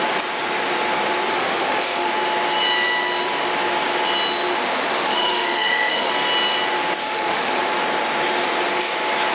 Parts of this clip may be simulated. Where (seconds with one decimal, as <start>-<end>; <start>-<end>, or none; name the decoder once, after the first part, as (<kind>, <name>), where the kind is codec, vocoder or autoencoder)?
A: 1.3-2.1 (autoencoder, DAC-VAE); 4.6-6.1; 7.0-7.6